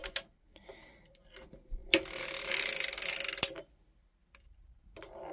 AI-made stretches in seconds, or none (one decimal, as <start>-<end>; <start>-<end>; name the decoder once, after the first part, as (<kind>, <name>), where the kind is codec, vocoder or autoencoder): none